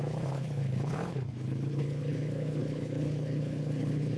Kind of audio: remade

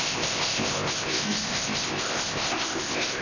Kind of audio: remade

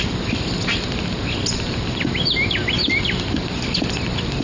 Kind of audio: recorded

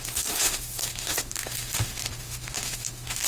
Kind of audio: remade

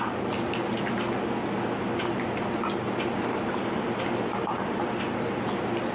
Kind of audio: recorded